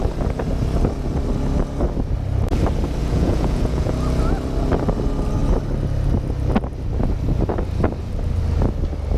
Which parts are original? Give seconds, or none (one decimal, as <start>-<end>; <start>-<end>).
0.0-3.0; 3.9-9.2